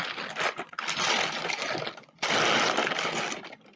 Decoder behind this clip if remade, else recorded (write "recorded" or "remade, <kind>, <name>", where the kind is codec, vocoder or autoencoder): recorded